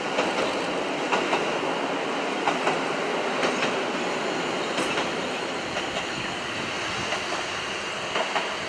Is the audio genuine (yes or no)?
yes